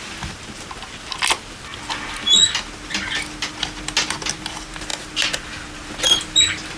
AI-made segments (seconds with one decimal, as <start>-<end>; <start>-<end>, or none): none